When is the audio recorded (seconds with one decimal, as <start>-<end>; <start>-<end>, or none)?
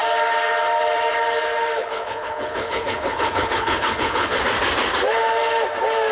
0.0-1.8; 4.4-6.1